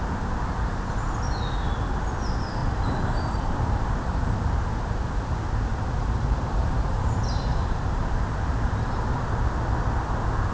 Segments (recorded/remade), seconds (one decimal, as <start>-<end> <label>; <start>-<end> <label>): 0.0-2.6 recorded; 2.6-4.7 remade; 4.7-5.7 recorded; 5.7-7.1 remade; 7.1-7.5 recorded; 7.5-9.1 remade; 9.1-10.5 recorded